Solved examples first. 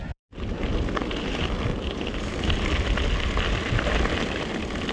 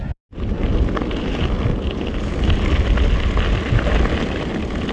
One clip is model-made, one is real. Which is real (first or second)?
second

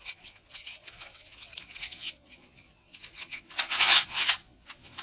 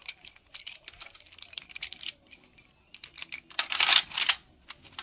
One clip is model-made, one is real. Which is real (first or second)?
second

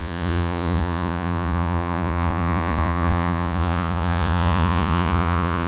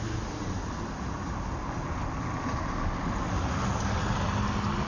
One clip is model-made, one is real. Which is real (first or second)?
second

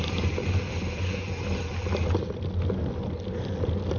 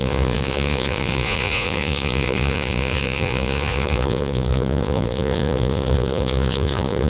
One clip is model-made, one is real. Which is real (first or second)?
first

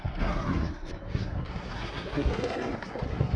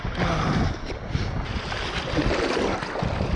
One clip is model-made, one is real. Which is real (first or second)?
second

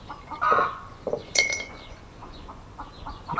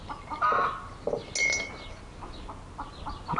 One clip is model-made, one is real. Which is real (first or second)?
second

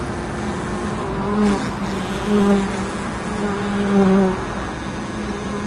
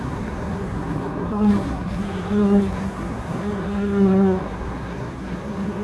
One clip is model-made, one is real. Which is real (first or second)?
first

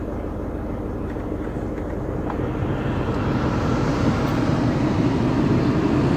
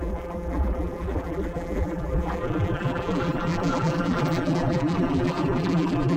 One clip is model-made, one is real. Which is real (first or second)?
first